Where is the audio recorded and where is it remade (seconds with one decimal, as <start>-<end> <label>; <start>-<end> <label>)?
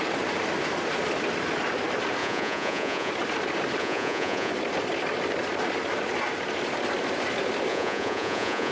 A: 0.0-2.2 recorded; 2.2-3.1 remade; 3.1-3.8 recorded; 3.8-4.5 remade; 4.5-7.7 recorded; 7.7-8.7 remade